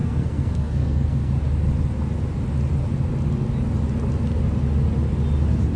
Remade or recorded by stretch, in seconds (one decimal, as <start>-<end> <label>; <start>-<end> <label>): 0.0-1.3 remade; 1.3-5.8 recorded